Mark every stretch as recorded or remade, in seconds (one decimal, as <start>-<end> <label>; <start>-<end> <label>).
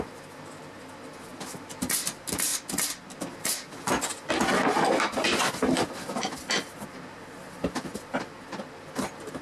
0.0-9.4 remade